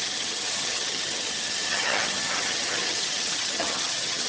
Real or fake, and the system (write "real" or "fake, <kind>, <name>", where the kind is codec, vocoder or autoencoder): fake, vocoder, HiFi-GAN